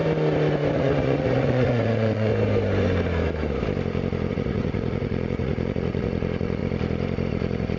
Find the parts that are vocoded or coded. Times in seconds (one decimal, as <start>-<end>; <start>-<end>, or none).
0.7-2.3; 4.3-6.6; 7.3-7.8